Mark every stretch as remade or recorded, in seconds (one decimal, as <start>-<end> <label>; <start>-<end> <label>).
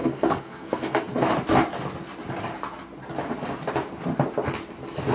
0.0-1.3 remade; 1.3-5.1 recorded